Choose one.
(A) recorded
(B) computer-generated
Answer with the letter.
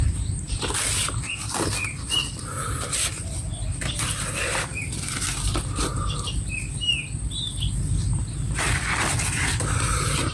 A